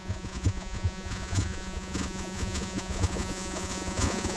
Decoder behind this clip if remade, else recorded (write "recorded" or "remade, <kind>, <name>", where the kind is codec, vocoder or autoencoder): remade, vocoder, Vocos